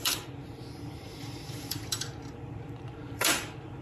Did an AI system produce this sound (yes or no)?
yes